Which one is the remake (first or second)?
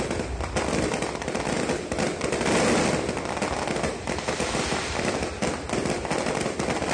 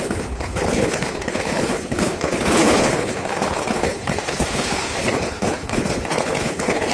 second